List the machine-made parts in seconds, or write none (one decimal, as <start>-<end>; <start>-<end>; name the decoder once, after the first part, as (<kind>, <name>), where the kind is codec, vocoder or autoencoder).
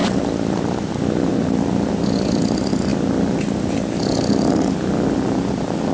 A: none